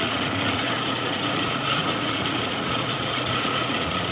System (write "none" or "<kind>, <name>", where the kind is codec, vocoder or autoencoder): vocoder, Vocos